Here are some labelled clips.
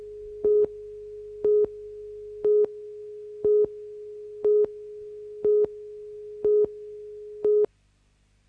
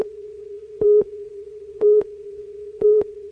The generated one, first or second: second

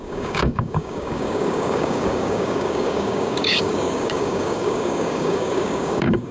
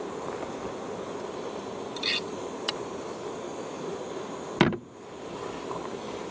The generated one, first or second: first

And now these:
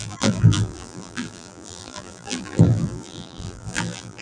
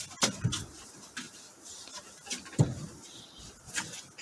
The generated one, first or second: first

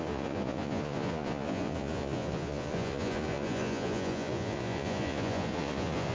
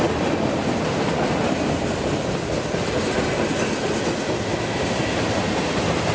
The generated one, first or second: first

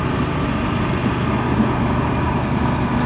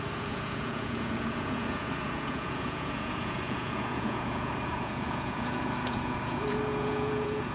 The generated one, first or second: second